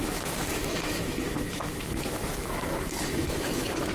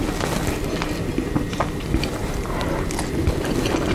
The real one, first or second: second